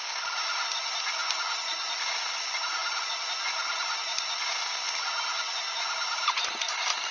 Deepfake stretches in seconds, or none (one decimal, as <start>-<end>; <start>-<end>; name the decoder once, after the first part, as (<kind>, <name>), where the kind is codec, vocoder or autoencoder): none